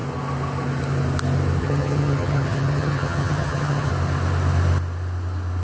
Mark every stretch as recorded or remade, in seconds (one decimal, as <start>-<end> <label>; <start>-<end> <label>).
0.0-1.6 recorded; 1.6-3.9 remade; 3.9-5.6 recorded